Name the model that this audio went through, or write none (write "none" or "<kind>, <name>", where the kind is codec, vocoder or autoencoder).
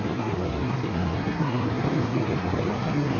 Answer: codec, SNAC